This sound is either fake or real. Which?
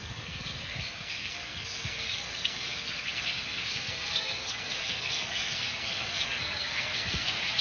fake